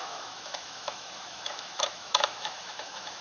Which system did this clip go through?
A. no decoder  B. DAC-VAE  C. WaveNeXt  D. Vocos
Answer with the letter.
B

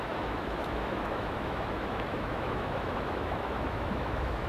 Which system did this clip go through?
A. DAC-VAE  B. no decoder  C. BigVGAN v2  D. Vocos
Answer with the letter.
A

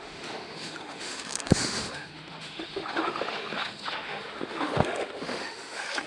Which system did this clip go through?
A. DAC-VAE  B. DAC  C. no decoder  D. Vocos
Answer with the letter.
A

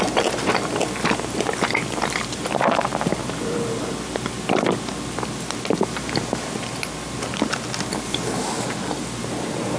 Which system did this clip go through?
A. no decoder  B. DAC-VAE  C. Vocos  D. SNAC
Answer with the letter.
A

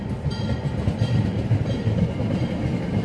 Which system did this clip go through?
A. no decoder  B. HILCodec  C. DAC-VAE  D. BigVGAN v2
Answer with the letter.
A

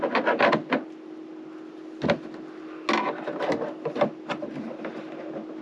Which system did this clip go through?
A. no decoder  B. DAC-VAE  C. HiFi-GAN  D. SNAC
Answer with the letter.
A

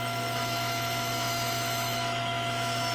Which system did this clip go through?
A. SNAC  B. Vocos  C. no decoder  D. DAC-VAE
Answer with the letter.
D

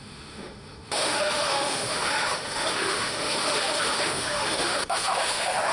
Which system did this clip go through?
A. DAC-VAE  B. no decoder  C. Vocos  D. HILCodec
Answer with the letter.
A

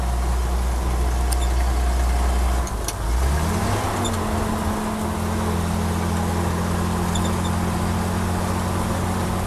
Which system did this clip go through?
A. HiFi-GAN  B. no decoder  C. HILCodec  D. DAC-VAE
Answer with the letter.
B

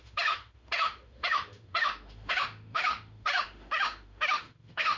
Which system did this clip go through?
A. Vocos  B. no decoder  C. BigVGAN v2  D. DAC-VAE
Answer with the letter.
D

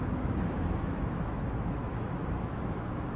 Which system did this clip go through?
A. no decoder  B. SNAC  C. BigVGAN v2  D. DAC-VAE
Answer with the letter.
D